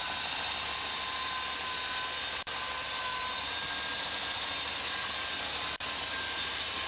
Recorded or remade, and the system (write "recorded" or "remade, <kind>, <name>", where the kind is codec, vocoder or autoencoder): recorded